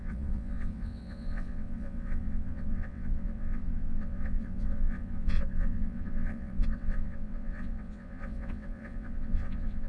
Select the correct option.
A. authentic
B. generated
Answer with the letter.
B